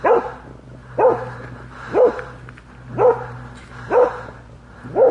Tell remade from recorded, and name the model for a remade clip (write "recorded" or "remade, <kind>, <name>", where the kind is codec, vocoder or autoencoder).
recorded